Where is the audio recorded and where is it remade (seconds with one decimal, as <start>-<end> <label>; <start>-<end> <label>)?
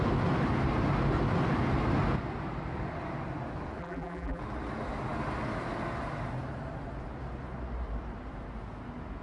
0.0-3.8 recorded; 3.8-4.4 remade; 4.4-9.2 recorded